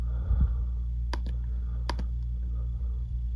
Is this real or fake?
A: real